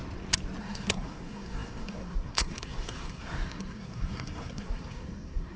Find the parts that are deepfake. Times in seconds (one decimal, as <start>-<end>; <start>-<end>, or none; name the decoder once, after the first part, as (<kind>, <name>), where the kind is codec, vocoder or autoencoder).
0.6-5.6 (codec, SNAC)